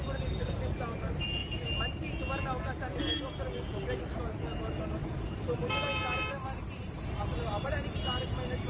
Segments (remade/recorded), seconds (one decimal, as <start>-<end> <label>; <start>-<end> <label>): 0.0-8.7 recorded

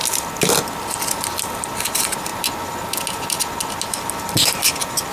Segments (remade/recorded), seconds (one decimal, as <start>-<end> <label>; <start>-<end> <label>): 0.0-5.1 recorded

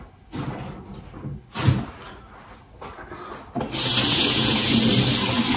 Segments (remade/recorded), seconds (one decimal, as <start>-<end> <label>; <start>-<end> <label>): 0.0-3.9 recorded; 3.9-4.8 remade; 4.8-5.6 recorded

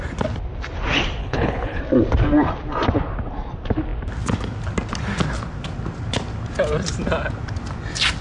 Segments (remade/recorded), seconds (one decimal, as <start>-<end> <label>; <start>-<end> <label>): 0.0-1.2 recorded; 1.2-1.8 remade; 1.8-8.2 recorded

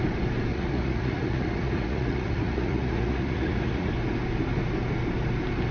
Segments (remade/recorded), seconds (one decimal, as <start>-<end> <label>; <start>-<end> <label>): 0.0-0.5 recorded; 0.5-3.9 remade; 3.9-5.7 recorded